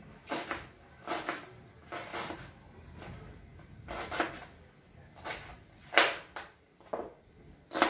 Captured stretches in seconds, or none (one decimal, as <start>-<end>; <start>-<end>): 0.0-7.9